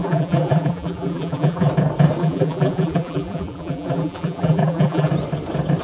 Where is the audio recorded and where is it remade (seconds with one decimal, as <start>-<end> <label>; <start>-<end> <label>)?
0.0-1.7 remade; 1.7-2.2 recorded; 2.2-5.1 remade; 5.1-5.8 recorded